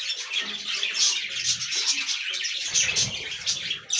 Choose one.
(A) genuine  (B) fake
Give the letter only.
A